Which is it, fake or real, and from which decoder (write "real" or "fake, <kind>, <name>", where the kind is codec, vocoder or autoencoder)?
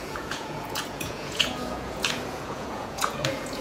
fake, vocoder, Vocos